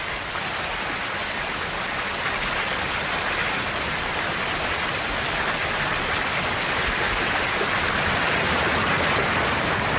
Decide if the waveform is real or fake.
real